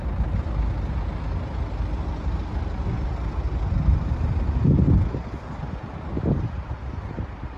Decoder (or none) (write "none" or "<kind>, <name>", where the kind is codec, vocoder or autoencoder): none